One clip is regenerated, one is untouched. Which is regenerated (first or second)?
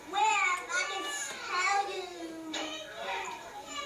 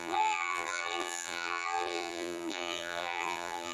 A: second